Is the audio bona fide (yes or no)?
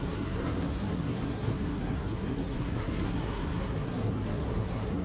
no